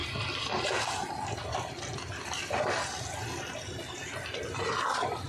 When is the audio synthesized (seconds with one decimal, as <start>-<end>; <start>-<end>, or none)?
none